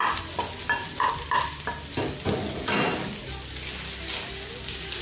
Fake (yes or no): no